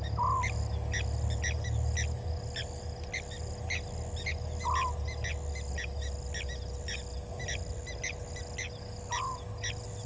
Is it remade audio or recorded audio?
recorded